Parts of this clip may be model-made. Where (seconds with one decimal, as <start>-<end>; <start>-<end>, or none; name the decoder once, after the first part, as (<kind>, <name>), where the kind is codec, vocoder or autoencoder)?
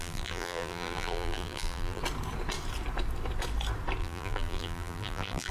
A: 0.0-2.0 (vocoder, BigVGAN v2); 4.0-5.5